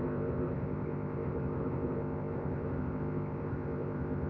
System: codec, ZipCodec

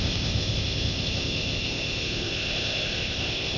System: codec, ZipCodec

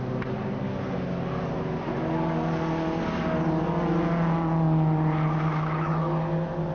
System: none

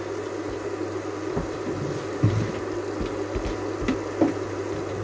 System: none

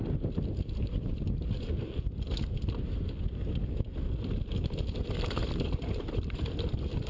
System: none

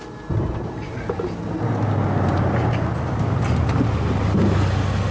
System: none